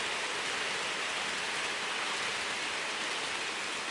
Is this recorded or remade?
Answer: recorded